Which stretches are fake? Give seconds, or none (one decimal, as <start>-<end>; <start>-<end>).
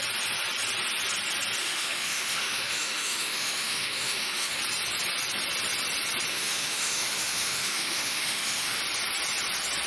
1.6-4.6; 6.3-8.8